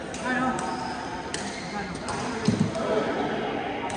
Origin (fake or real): real